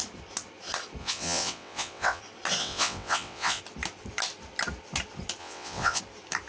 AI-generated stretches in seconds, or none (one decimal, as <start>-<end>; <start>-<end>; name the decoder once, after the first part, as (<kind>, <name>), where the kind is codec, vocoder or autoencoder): 1.0-2.2 (vocoder, WaveNeXt); 2.6-3.6; 5.4-6.0